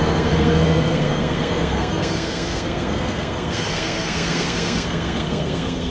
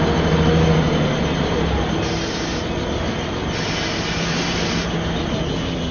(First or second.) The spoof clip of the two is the first